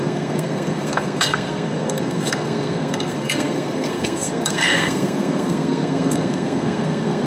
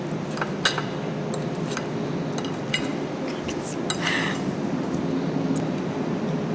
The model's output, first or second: first